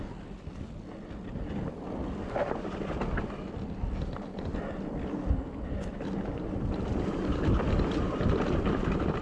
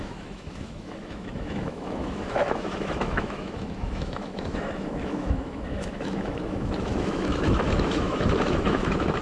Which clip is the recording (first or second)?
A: first